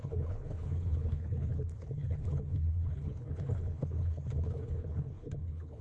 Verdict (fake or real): fake